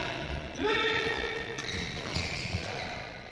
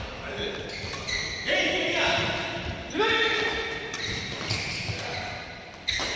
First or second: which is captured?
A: second